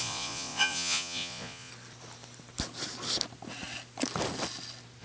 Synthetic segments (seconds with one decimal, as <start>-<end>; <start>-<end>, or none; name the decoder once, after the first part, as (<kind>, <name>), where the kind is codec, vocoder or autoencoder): 0.0-1.7 (vocoder, Vocos)